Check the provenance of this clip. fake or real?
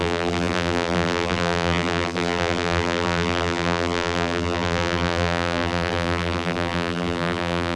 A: fake